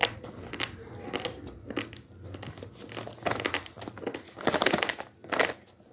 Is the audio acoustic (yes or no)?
yes